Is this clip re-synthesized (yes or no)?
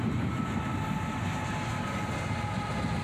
no